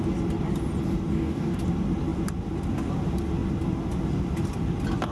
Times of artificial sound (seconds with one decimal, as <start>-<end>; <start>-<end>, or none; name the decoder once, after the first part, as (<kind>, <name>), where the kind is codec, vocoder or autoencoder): 1.1-1.6 (codec, DAC)